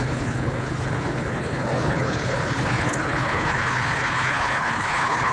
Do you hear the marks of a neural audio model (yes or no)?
yes